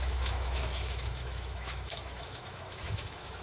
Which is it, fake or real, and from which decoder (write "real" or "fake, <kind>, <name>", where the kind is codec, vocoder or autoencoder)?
fake, autoencoder, DAC-VAE